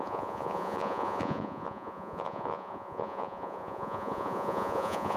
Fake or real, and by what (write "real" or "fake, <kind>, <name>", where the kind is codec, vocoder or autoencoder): fake, vocoder, Vocos